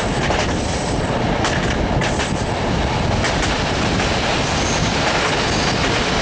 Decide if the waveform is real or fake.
real